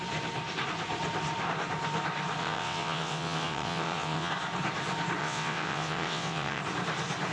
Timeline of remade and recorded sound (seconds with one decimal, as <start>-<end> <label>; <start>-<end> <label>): 0.0-2.4 recorded; 2.4-4.3 remade; 4.3-5.2 recorded; 5.2-6.6 remade; 6.6-7.3 recorded